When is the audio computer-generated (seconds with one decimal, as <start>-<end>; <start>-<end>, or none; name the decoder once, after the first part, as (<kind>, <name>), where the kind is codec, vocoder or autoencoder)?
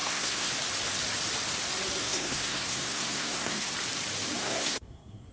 0.0-0.5 (codec, SNAC); 2.0-3.7; 4.4-5.3